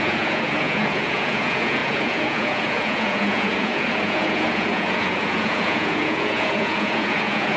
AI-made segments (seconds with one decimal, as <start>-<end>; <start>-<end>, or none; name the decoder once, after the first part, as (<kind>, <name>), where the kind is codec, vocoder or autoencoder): 0.0-7.6 (vocoder, Vocos)